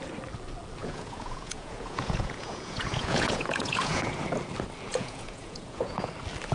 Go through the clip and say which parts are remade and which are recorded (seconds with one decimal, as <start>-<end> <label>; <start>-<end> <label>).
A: 0.0-0.8 recorded; 0.8-4.1 remade; 4.1-4.9 recorded; 4.9-6.1 remade; 6.1-6.5 recorded